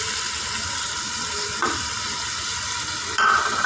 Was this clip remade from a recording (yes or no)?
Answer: no